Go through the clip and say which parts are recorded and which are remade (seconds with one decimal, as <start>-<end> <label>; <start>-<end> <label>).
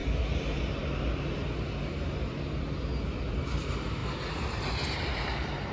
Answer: 0.0-3.4 recorded; 3.4-5.7 remade